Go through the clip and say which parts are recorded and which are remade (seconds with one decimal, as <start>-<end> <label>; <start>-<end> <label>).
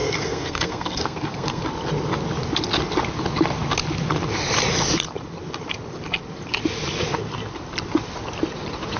0.0-1.6 remade; 1.6-9.0 recorded